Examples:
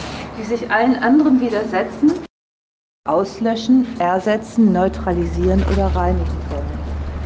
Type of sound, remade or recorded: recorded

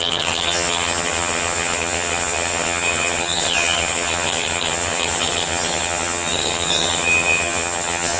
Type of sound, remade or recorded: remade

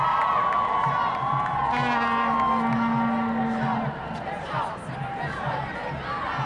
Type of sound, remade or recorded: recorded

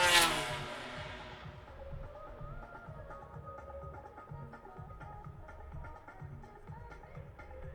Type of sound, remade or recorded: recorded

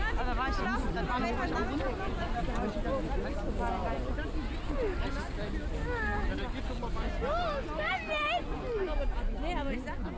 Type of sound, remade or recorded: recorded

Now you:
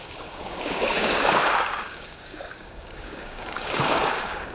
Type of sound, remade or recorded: remade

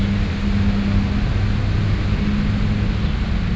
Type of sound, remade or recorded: recorded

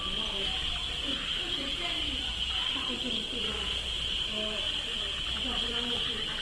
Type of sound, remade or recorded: remade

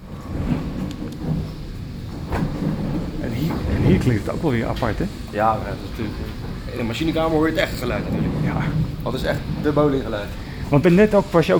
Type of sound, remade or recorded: recorded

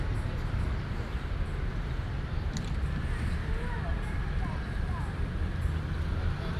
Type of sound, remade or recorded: remade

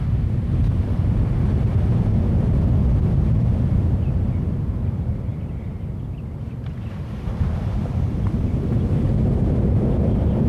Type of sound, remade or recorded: recorded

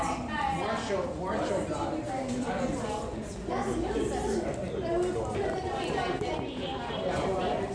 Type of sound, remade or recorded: recorded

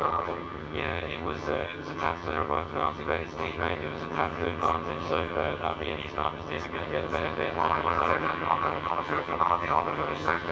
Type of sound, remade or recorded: remade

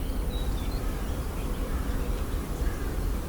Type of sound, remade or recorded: recorded